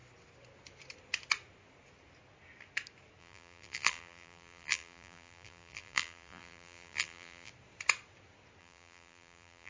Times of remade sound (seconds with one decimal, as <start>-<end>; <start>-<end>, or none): 3.2-7.5; 8.6-9.7

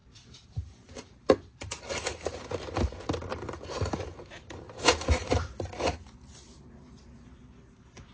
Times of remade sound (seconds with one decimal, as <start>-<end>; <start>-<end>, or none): 0.0-2.9; 3.3-5.5

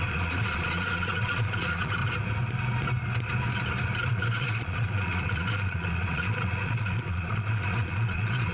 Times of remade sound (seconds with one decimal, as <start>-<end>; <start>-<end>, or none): 0.0-2.0; 4.1-8.5

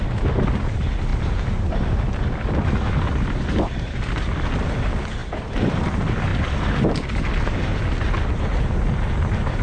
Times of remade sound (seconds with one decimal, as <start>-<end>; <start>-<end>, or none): none

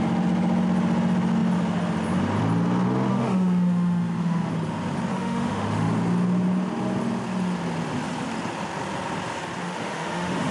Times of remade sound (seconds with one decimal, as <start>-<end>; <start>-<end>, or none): 3.1-4.5; 5.1-5.9; 9.6-10.5

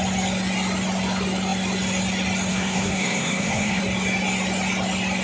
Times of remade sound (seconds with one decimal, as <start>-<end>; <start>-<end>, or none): 2.5-3.8

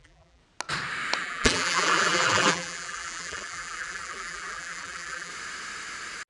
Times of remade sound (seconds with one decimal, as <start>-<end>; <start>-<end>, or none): 0.0-0.4; 1.2-5.3

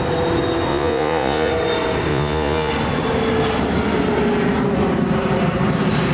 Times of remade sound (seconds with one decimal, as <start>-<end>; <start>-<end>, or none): 0.7-1.5; 2.1-2.7